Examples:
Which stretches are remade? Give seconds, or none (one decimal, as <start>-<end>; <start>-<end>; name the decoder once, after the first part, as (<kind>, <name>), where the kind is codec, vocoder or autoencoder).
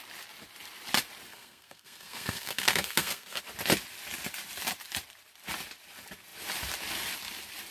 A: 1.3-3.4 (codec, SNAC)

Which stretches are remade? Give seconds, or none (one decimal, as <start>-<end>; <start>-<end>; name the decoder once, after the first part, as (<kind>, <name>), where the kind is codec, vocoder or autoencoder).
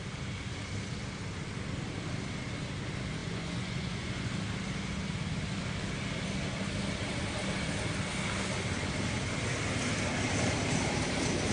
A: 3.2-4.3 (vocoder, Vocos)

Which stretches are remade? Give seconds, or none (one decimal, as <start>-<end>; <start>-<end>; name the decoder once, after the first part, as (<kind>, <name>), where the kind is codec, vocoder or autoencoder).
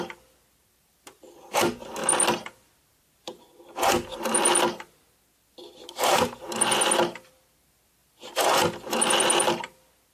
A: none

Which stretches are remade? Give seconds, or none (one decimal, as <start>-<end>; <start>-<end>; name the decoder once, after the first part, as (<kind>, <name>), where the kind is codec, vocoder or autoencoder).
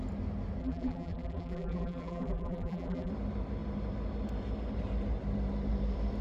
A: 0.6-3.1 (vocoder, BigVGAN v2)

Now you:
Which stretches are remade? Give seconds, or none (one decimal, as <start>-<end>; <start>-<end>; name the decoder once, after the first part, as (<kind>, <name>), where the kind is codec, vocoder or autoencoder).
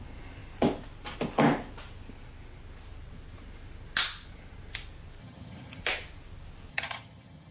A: 5.2-5.8 (vocoder, HiFi-GAN); 6.7-7.5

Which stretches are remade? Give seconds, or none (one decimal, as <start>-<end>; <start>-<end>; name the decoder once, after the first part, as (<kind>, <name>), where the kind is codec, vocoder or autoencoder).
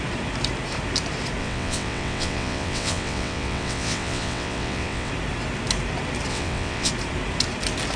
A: 1.4-5.1 (vocoder, WaveNeXt); 6.3-6.9